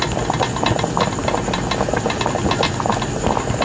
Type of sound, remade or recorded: remade